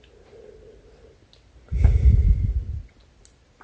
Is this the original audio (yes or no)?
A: yes